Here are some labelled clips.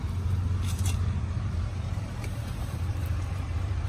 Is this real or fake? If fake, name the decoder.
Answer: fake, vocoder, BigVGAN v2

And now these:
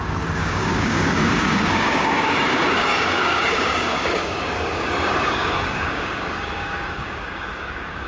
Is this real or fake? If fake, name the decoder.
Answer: fake, codec, DAC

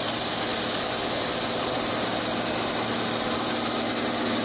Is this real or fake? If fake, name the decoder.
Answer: real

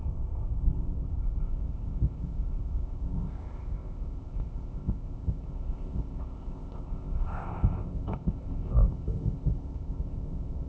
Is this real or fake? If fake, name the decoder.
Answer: fake, codec, ZipCodec